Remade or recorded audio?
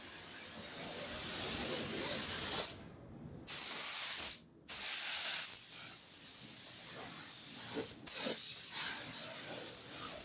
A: recorded